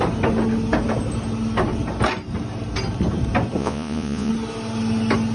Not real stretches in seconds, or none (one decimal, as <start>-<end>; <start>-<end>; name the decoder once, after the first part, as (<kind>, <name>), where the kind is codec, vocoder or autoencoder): 3.6-4.3 (vocoder, Vocos)